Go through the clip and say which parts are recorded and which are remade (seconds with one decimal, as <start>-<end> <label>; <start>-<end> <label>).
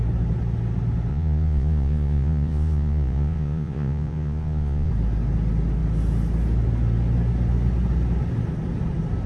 0.0-1.1 recorded; 1.1-4.9 remade; 4.9-9.3 recorded